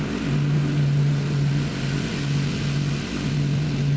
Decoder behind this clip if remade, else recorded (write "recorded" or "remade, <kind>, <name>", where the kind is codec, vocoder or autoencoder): recorded